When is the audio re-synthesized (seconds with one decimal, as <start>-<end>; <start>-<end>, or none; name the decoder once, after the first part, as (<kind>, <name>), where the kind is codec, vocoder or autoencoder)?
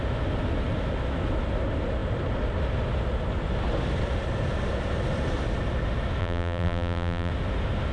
6.2-7.3 (vocoder, BigVGAN v2)